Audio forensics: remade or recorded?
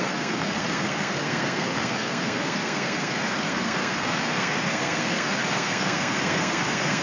remade